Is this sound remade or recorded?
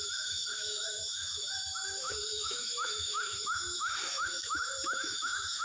remade